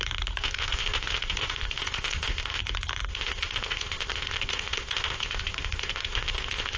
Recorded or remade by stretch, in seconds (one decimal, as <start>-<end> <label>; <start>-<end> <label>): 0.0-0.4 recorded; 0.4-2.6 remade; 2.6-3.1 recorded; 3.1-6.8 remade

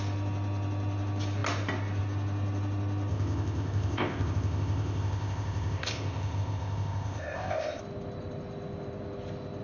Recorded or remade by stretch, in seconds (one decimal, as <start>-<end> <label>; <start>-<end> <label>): 0.0-3.1 recorded; 3.1-7.8 remade; 7.8-9.6 recorded

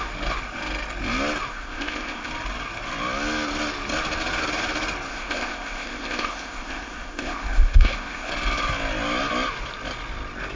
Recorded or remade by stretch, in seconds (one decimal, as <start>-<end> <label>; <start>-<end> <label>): 0.0-1.5 recorded; 1.5-2.3 remade; 2.3-5.1 recorded; 5.1-8.3 remade; 8.3-10.6 recorded

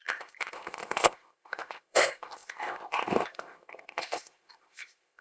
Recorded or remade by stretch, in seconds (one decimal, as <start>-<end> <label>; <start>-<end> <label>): 0.0-5.2 remade

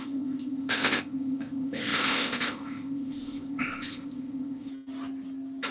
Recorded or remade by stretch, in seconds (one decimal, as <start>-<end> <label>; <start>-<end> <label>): 0.0-4.7 remade; 4.7-5.7 recorded

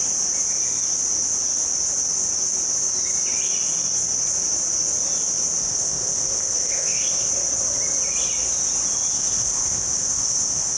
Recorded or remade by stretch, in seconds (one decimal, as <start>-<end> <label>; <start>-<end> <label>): 0.0-5.6 recorded; 5.6-7.3 remade; 7.3-9.1 recorded; 9.1-10.8 remade